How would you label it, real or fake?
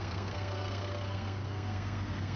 fake